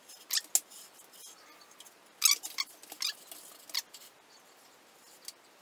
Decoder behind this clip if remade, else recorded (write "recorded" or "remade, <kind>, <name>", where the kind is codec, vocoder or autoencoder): recorded